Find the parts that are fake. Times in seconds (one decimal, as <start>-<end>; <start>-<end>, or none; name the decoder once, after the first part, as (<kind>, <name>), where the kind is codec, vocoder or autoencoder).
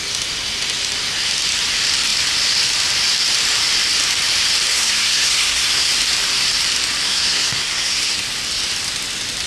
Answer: 4.7-5.9 (codec, SNAC); 7.0-8.1